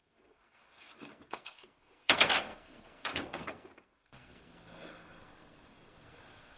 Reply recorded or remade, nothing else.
remade